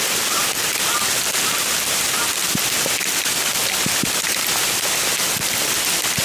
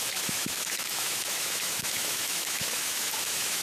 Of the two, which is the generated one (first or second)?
second